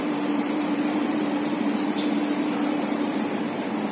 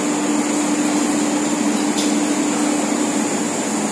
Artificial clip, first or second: first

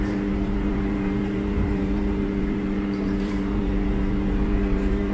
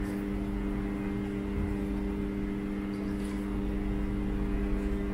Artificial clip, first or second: first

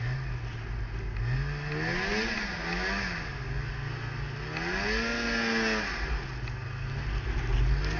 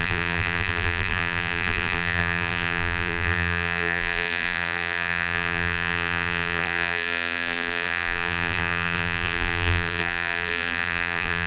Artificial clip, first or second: second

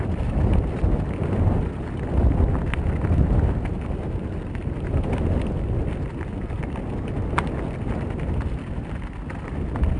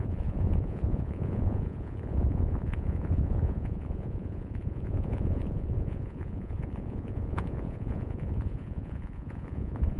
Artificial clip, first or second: second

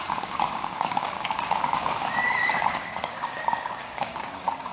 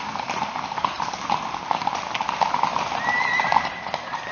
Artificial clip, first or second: first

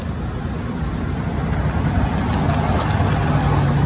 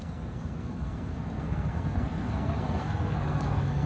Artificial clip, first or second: second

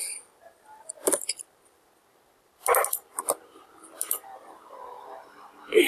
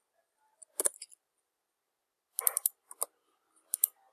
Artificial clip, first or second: first